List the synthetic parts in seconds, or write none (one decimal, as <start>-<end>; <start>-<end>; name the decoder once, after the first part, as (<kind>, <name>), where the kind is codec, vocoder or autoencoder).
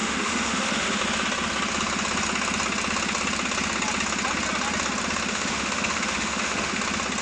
0.0-1.0 (autoencoder, DAC-VAE); 5.3-6.8